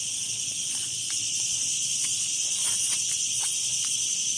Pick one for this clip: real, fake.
fake